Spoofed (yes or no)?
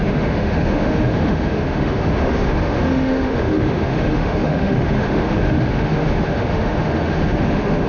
yes